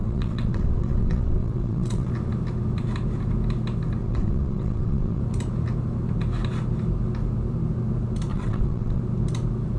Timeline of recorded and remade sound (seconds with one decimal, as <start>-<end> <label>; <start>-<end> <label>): 0.0-2.1 remade; 2.1-4.0 recorded; 4.0-5.2 remade; 5.2-8.3 recorded; 8.3-9.0 remade; 9.0-9.8 recorded